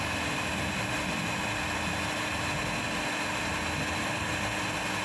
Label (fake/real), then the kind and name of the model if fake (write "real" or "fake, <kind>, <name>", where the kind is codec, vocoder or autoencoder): real